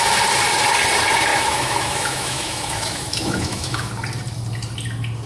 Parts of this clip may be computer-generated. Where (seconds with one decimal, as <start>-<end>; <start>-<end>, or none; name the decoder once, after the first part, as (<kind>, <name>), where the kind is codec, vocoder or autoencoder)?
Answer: 1.3-3.9 (autoencoder, DAC-VAE)